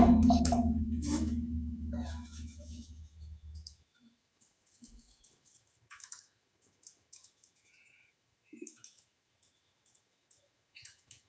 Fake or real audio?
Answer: fake